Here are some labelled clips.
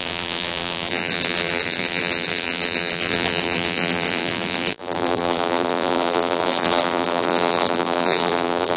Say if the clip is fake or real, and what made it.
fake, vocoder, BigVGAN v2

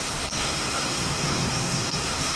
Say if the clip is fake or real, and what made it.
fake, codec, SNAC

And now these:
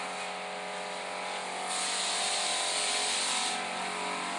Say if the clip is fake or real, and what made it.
real